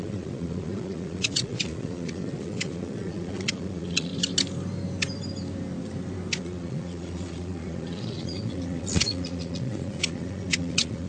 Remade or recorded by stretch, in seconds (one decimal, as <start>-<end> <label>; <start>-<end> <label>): 0.0-4.1 remade; 4.1-6.4 recorded; 6.4-11.1 remade

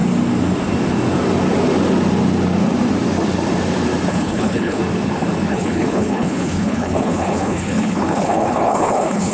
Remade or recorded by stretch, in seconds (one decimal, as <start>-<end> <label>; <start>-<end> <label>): 0.0-4.1 recorded; 4.1-4.8 remade; 4.8-5.5 recorded; 5.5-9.3 remade

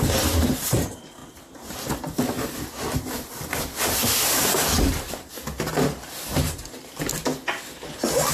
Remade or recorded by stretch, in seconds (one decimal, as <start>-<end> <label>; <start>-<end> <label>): 0.0-8.3 recorded

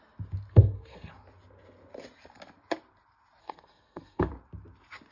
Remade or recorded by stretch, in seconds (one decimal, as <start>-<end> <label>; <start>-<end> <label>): 0.0-0.5 recorded; 0.5-1.1 remade; 1.1-3.4 recorded; 3.4-4.3 remade; 4.3-5.1 recorded

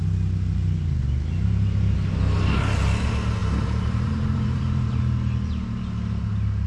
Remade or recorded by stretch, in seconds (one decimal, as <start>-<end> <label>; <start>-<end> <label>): 0.0-3.4 recorded; 3.4-5.0 remade; 5.0-6.7 recorded

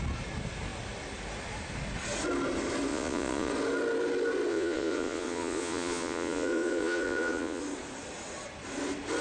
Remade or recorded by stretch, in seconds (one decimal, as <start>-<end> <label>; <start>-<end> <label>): 0.0-2.9 recorded; 2.9-3.5 remade; 3.5-4.5 recorded; 4.5-7.6 remade; 7.6-9.2 recorded

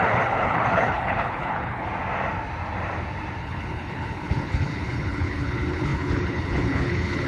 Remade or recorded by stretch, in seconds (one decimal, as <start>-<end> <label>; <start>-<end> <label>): 0.0-1.9 remade; 1.9-3.4 recorded; 3.4-7.3 remade

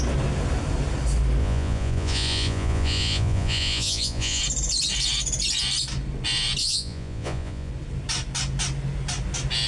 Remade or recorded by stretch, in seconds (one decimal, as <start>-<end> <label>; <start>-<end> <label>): 0.0-1.4 recorded; 1.4-4.4 remade; 4.4-6.6 recorded; 6.6-7.7 remade; 7.7-9.7 recorded